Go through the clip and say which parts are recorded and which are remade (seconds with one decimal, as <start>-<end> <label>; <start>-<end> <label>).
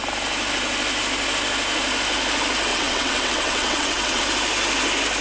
0.0-2.7 recorded; 2.7-4.2 remade; 4.2-5.2 recorded